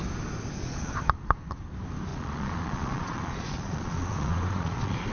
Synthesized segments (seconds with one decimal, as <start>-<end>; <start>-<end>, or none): 0.6-1.5; 2.1-5.1